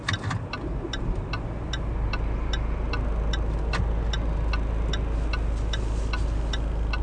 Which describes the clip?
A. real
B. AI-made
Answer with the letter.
A